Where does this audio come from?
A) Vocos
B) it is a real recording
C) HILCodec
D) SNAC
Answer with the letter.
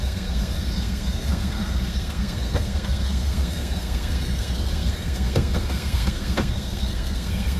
D